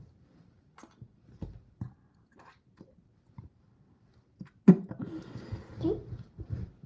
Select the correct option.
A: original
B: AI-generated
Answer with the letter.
A